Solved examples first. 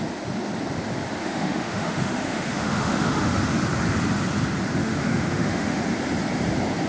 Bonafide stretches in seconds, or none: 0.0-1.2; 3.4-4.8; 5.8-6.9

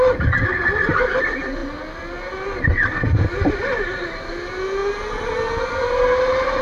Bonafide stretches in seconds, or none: 0.0-6.6

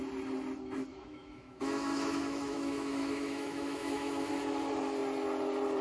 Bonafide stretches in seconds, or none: 0.0-0.9; 4.3-5.8

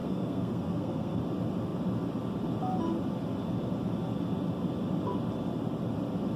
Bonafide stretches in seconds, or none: 1.2-6.4

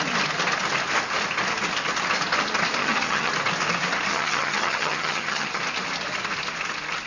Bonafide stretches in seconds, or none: 0.0-2.8; 3.3-4.1; 5.6-7.1

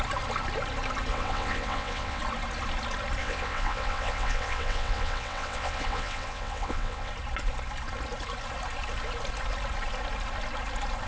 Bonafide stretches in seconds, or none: 0.0-1.1; 2.2-3.2; 7.1-11.1

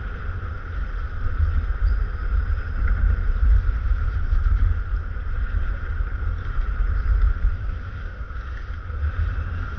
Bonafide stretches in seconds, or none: 0.0-7.5; 8.4-9.8